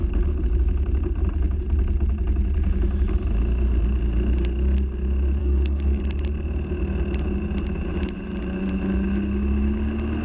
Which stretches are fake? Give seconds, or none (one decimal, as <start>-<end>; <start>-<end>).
5.4-6.0